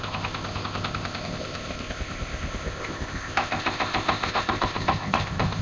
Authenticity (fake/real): fake